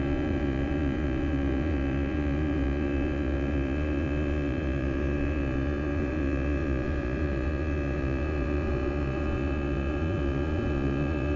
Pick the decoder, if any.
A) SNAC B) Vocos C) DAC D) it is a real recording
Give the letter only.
B